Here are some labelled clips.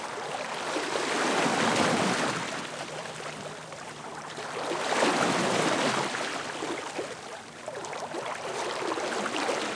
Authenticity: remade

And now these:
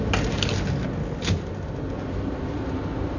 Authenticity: recorded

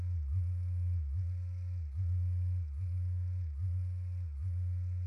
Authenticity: recorded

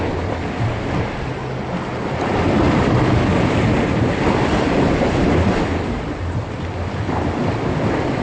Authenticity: recorded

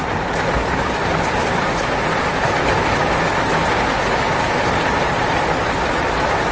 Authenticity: recorded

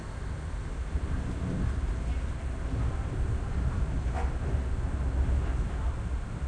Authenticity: recorded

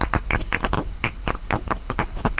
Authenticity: remade